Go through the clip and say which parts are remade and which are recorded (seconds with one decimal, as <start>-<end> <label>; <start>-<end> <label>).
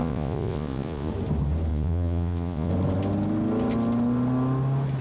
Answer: 0.0-1.1 remade; 1.1-1.7 recorded; 1.7-2.7 remade; 2.7-5.0 recorded